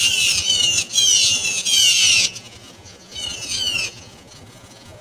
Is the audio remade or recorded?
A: remade